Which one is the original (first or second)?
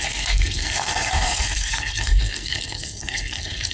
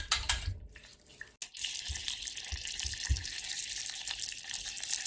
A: second